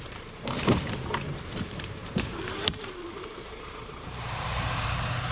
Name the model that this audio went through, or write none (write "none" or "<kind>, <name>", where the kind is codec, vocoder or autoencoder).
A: vocoder, BigVGAN v2